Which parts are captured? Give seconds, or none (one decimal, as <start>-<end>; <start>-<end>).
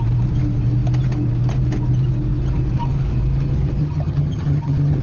0.0-3.8